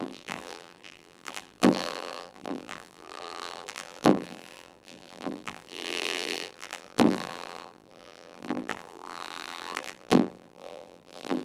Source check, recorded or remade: remade